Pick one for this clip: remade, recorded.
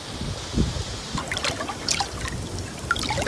recorded